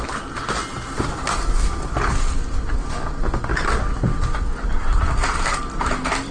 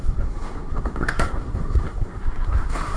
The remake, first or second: second